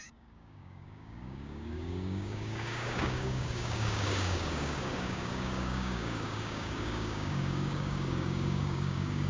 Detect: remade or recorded remade